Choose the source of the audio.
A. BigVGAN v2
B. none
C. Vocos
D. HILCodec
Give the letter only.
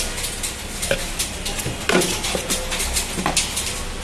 B